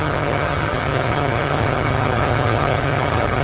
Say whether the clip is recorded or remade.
remade